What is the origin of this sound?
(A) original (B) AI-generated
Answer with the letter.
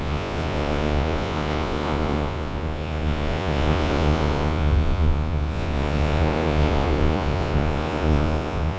B